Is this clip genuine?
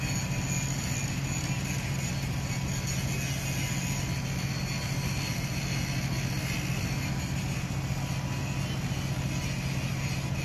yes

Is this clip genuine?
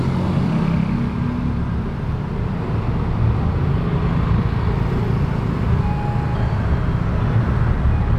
yes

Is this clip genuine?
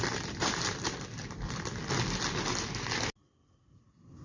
yes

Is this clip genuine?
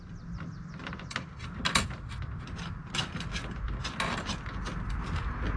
yes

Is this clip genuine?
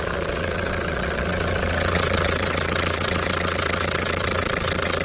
no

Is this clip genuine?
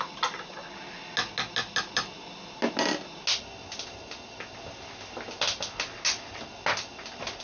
yes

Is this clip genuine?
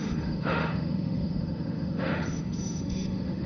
no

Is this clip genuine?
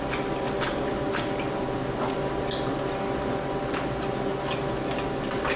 yes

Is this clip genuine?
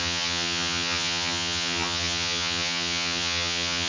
no